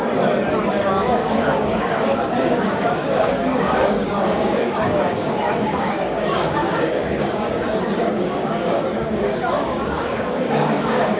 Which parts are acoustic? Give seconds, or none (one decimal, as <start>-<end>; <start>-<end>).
0.0-0.7